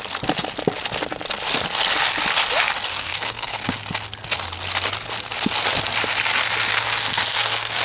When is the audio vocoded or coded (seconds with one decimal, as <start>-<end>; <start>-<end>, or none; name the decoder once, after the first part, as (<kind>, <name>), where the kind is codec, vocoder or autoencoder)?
2.9-3.8 (codec, SNAC); 6.7-7.8